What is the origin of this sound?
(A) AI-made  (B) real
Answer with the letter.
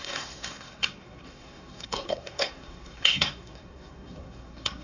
A